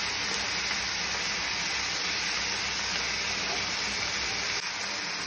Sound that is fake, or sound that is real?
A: real